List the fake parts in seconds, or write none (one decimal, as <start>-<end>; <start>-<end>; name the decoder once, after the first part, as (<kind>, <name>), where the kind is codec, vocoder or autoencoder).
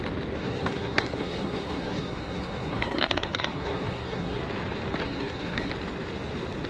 0.4-4.4 (codec, SNAC); 5.0-5.7